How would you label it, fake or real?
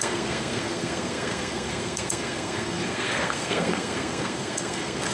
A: fake